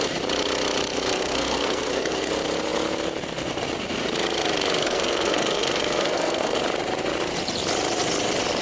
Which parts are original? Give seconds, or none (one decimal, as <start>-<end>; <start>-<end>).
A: 0.0-0.9; 2.3-4.8; 6.6-8.6